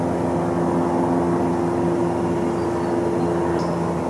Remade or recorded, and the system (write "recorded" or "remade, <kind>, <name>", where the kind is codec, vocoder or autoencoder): recorded